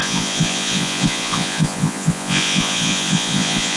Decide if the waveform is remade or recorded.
remade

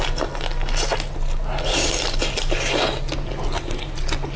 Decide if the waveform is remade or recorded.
recorded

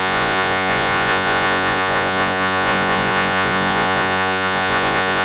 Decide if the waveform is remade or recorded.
remade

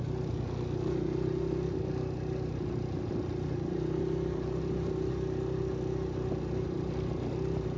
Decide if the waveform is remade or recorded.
recorded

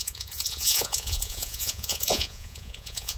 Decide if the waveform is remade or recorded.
remade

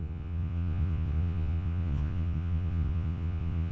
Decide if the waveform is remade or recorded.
remade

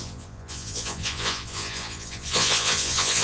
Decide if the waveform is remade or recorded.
remade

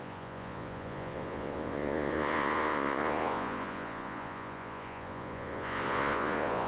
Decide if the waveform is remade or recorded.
remade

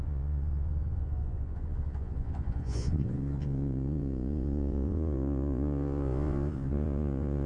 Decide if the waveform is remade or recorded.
remade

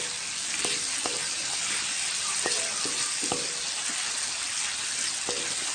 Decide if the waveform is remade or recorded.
recorded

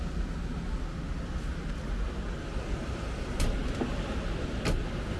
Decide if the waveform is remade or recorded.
recorded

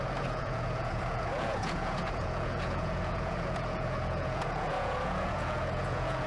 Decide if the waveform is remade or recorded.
remade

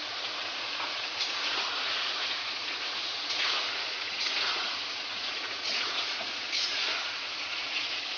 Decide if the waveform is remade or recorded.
remade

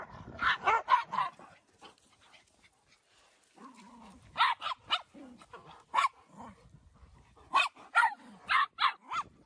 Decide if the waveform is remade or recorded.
recorded